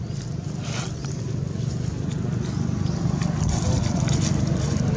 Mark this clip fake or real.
real